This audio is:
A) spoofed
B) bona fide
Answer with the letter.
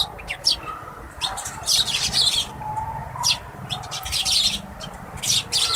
A